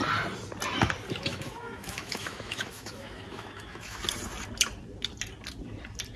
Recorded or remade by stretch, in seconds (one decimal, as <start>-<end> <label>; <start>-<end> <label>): 0.0-1.3 recorded; 1.3-4.0 remade; 4.0-6.2 recorded